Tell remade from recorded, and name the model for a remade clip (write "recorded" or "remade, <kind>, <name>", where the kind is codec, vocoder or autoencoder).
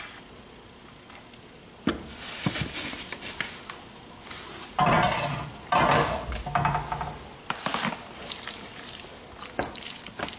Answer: recorded